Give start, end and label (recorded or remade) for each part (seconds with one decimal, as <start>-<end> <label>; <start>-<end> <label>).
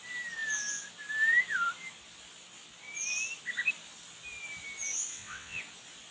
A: 0.0-5.1 recorded; 5.1-5.6 remade; 5.6-6.1 recorded